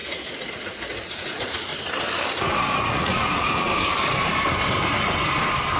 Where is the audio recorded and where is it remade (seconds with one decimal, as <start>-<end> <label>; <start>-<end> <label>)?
0.0-0.5 recorded; 0.5-1.7 remade; 1.7-2.8 recorded; 2.8-3.7 remade; 3.7-5.8 recorded